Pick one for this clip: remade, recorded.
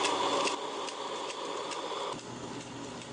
recorded